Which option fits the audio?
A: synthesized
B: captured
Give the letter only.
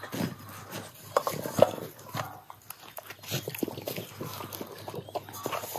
B